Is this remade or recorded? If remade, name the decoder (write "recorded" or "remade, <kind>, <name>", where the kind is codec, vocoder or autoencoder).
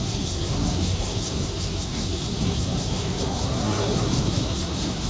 remade, codec, SNAC